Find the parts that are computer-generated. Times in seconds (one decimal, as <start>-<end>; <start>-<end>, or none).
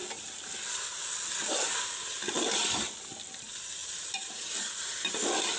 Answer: 3.8-5.1